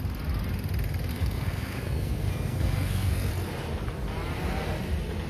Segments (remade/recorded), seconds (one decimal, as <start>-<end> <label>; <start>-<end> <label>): 0.0-1.1 recorded; 1.1-3.3 remade; 3.3-5.3 recorded